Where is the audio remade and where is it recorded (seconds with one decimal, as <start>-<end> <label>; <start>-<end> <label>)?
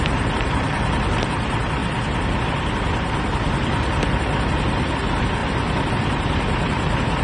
0.0-1.8 remade; 1.8-2.5 recorded; 2.5-5.4 remade; 5.4-5.9 recorded; 5.9-7.2 remade